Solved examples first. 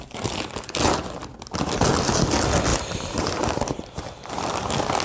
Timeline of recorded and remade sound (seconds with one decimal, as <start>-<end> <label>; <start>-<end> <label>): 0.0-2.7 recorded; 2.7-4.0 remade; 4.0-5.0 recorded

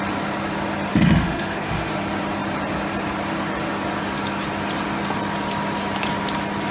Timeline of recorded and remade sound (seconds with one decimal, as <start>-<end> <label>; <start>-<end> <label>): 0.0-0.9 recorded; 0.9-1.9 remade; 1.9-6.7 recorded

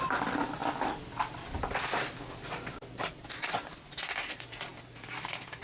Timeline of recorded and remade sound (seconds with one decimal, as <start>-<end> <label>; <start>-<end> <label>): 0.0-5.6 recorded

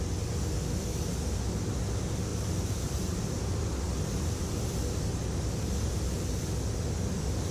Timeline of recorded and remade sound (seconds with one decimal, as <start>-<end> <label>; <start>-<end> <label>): 0.0-2.3 recorded; 2.3-3.6 remade; 3.6-5.1 recorded; 5.1-6.4 remade; 6.4-7.5 recorded

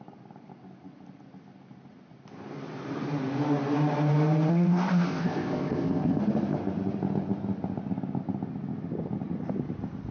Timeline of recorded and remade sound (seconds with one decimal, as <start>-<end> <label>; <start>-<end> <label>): 0.0-4.5 recorded; 4.5-6.2 remade; 6.2-10.1 recorded

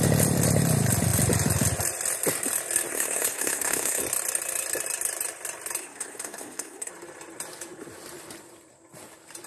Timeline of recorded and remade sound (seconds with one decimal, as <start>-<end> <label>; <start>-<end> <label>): 0.0-2.9 recorded; 2.9-4.0 remade; 4.0-5.8 recorded; 5.8-6.9 remade; 6.9-9.5 recorded

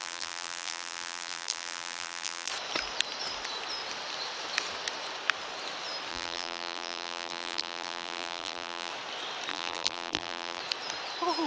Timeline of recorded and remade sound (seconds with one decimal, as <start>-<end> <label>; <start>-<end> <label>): 0.0-2.5 remade; 2.5-6.1 recorded; 6.1-8.9 remade; 8.9-9.5 recorded; 9.5-10.6 remade; 10.6-11.5 recorded